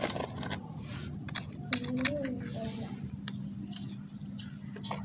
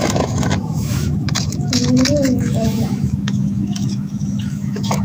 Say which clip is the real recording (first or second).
first